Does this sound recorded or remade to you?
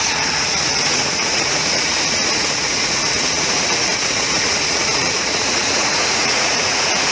remade